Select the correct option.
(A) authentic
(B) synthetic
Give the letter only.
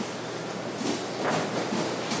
A